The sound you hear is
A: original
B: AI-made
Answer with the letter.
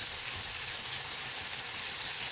A